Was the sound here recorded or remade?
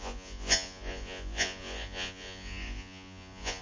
remade